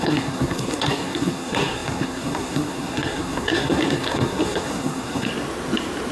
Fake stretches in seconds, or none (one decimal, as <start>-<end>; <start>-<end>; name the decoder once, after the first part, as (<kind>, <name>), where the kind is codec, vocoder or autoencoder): 0.0-5.3 (codec, SNAC)